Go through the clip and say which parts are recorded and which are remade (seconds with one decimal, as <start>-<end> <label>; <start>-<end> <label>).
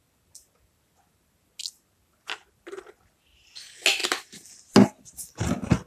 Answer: 0.0-5.9 recorded